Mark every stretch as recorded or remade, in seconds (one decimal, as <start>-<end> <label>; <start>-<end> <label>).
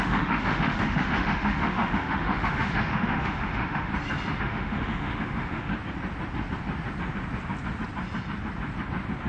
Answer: 0.0-3.9 remade; 3.9-4.4 recorded; 4.4-5.7 remade; 5.7-9.3 recorded